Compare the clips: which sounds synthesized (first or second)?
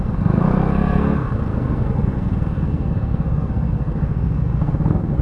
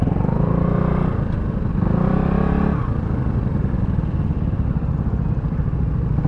first